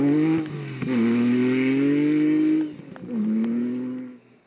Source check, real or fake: real